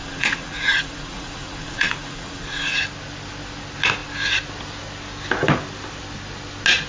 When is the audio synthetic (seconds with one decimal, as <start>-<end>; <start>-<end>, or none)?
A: 0.0-2.8